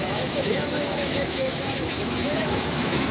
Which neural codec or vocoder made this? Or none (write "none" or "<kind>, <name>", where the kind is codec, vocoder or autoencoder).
autoencoder, DAC-VAE